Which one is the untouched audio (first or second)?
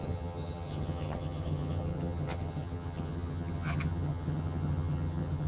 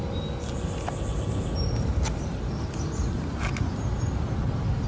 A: second